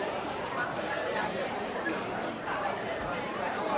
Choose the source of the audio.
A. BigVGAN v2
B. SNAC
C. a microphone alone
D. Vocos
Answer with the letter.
A